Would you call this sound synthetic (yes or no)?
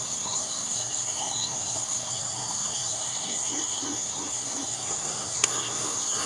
yes